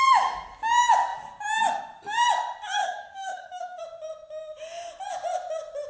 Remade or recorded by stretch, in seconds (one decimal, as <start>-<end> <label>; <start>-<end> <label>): 0.0-2.8 recorded; 2.8-3.8 remade; 3.8-5.9 recorded